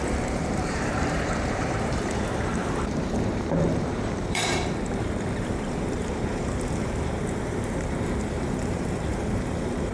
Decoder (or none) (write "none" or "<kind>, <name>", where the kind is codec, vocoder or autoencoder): vocoder, BigVGAN v2